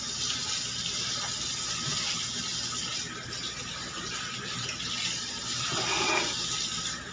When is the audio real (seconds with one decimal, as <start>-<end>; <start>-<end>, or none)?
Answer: 0.0-2.9; 4.3-7.1